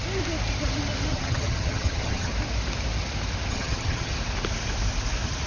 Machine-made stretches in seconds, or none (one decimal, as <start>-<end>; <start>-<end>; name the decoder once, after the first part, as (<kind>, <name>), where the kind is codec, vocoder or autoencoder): 1.1-2.3 (vocoder, HiFi-GAN); 3.5-4.1